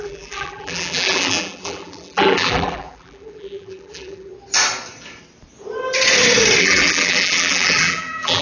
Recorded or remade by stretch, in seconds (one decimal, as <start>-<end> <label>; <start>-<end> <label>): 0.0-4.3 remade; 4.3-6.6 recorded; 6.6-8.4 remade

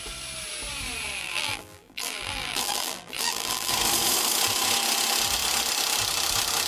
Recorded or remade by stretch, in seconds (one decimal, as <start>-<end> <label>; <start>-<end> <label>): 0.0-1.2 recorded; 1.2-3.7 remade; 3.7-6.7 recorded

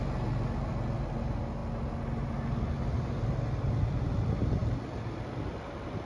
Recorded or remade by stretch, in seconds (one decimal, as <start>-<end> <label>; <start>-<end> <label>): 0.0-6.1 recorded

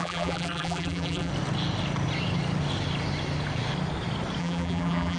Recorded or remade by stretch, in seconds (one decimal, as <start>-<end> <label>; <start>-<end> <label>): 0.0-1.3 remade; 1.3-4.4 recorded; 4.4-5.2 remade

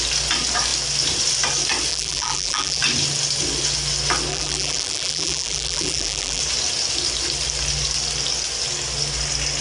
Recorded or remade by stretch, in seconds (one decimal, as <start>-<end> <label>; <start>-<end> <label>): 0.0-1.9 recorded; 1.9-2.8 remade; 2.8-4.3 recorded; 4.3-6.4 remade; 6.4-9.6 recorded